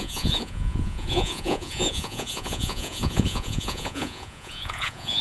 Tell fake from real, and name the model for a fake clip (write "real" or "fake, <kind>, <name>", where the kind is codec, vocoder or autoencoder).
fake, vocoder, Vocos